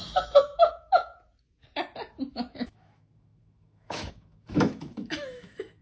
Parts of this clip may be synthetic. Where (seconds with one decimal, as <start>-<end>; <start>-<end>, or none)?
0.0-1.1; 2.3-5.8